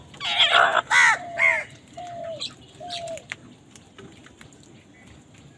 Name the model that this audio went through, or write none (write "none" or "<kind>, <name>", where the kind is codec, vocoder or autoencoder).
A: none